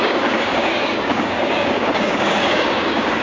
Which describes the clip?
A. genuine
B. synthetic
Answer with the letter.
B